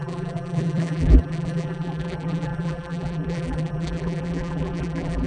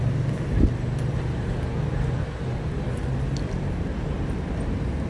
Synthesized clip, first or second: first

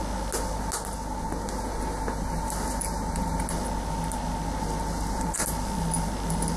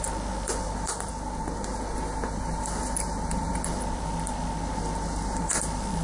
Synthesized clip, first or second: second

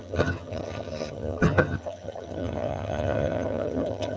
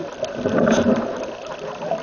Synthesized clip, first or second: first